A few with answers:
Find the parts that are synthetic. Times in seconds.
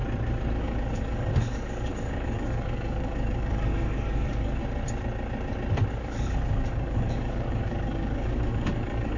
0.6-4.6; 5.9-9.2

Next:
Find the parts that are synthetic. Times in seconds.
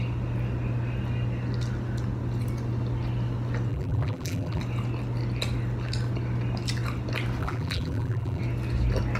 3.7-4.6; 7.4-8.4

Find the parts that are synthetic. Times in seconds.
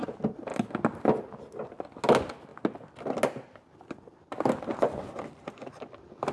none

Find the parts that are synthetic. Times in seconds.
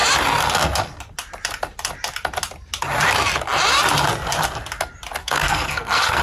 5.2-6.2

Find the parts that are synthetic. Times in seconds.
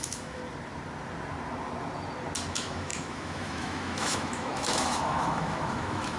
0.0-0.4; 2.5-6.2